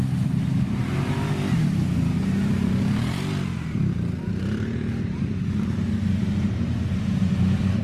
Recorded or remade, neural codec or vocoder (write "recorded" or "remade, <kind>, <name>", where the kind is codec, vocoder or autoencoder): remade, vocoder, BigVGAN v2